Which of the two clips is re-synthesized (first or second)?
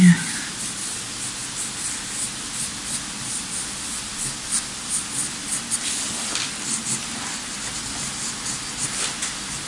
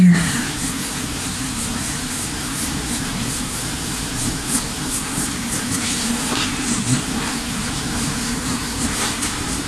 second